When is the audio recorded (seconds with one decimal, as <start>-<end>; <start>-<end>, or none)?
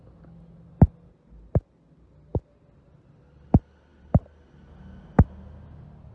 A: 0.0-6.1